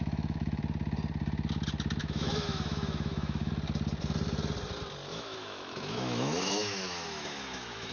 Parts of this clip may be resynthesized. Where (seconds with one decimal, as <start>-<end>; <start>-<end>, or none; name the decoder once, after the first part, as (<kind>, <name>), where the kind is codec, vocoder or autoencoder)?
0.0-0.6 (autoencoder, DAC-VAE); 2.0-3.5; 5.1-7.9